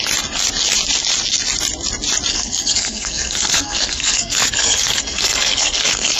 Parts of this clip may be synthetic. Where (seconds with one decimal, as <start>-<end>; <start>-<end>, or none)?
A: 2.3-6.2